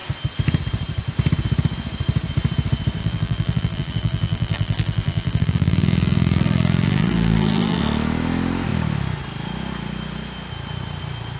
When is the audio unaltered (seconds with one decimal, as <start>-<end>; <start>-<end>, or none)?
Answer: 0.0-3.0; 7.8-11.4